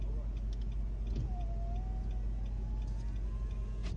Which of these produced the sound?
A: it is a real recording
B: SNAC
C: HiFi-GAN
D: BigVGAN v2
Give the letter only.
A